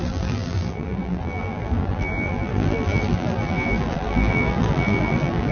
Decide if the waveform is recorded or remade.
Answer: remade